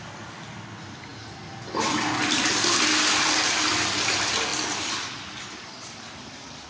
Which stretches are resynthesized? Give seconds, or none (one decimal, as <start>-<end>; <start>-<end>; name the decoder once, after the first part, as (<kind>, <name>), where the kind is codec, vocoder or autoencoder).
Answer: none